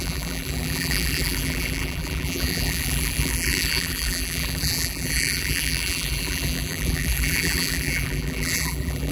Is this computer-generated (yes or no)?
yes